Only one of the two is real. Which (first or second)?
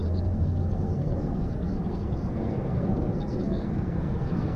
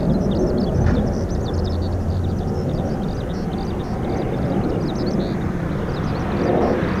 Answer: second